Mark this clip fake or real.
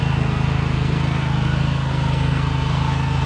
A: fake